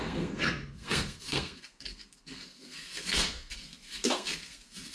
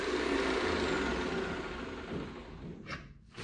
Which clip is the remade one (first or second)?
first